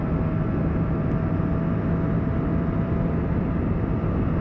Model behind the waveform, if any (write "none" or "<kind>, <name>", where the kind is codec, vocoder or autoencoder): none